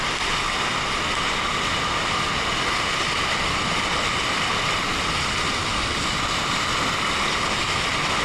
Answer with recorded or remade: recorded